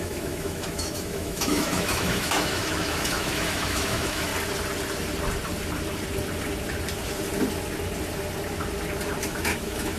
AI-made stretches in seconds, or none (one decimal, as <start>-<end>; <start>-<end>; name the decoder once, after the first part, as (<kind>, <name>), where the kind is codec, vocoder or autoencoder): 0.0-4.3 (autoencoder, DAC-VAE); 9.2-10.0